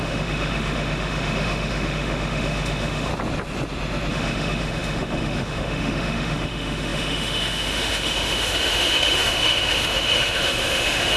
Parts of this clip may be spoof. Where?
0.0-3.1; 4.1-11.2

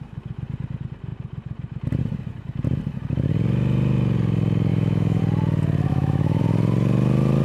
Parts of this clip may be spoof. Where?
4.7-5.2; 5.9-6.4

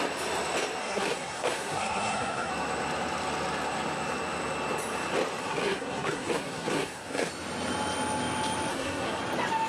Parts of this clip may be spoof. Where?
0.8-2.5; 5.4-7.3; 8.7-9.2

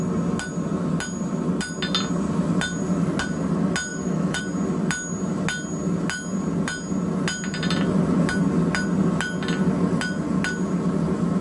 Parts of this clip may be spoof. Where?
3.9-4.4